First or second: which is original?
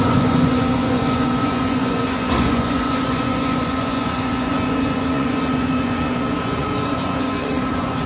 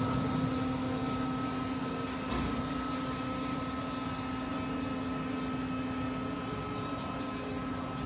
second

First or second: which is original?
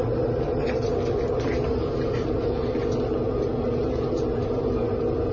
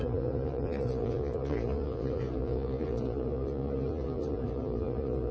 first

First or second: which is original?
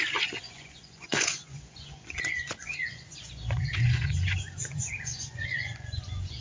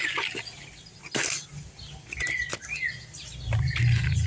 second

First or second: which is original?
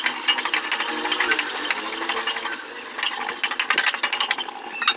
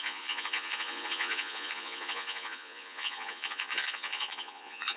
first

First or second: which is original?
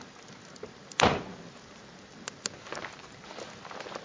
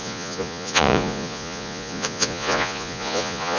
first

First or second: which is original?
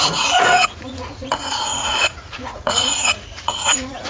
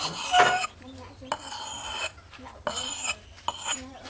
second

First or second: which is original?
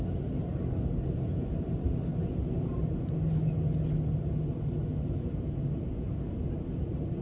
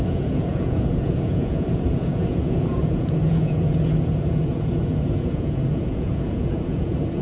first